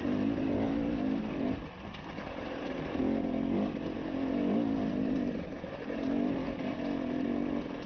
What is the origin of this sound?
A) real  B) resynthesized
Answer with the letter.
A